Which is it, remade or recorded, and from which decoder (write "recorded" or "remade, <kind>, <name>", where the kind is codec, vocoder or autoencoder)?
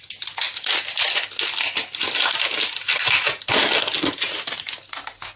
recorded